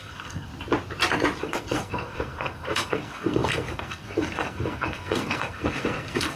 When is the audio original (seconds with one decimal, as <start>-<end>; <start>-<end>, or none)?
0.5-1.4